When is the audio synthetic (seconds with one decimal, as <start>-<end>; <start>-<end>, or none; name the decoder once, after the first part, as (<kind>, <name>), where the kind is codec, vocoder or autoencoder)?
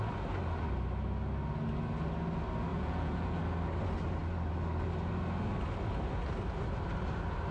2.7-3.4 (vocoder, Vocos)